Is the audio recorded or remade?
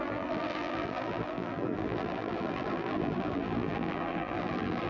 remade